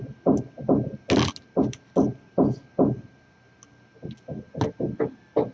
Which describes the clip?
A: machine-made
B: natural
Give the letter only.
B